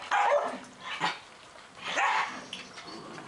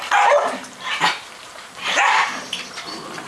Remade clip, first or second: second